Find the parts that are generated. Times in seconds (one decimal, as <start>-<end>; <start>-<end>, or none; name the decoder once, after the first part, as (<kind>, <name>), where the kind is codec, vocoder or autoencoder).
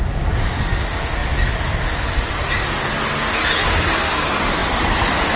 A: none